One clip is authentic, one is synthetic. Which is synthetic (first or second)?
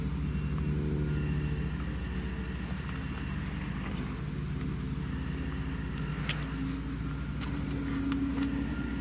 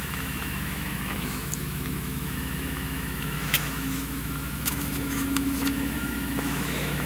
second